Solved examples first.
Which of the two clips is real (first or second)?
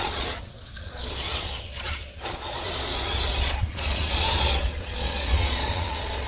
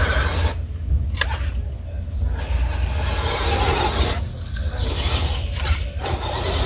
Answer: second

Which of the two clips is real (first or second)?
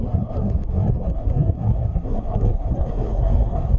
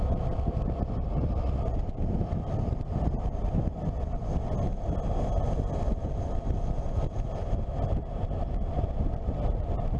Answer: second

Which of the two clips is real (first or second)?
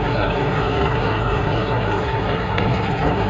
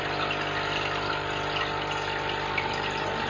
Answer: second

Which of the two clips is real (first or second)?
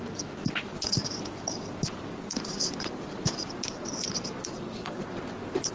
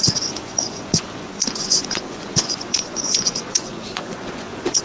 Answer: first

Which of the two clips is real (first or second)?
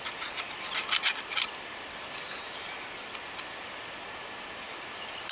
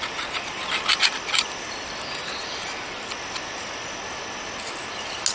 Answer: second